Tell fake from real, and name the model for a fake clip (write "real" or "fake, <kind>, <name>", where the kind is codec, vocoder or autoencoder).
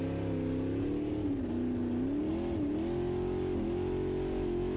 real